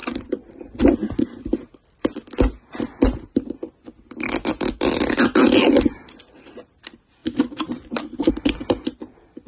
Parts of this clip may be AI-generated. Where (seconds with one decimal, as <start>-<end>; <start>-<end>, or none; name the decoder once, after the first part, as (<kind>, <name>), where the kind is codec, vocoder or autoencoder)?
0.0-1.4 (vocoder, BigVGAN v2); 7.2-8.3